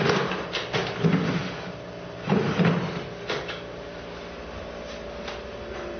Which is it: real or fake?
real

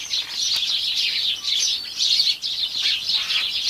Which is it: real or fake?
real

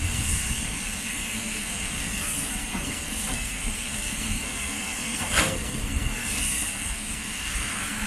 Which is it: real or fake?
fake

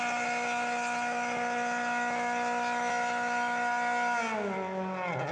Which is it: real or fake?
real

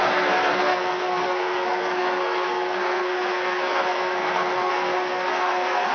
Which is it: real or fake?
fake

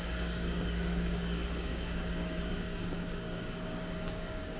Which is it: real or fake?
fake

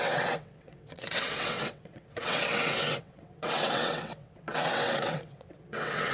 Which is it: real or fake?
fake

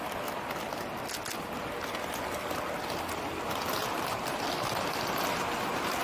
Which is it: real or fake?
real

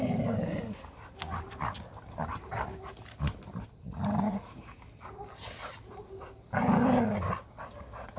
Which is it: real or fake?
real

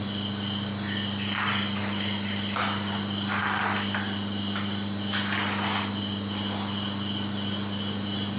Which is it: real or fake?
real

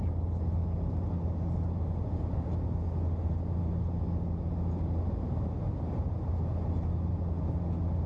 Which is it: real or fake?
real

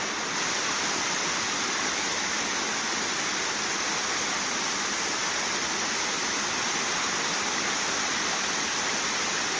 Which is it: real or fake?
real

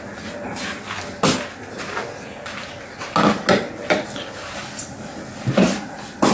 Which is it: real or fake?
real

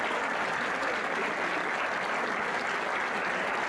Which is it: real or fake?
real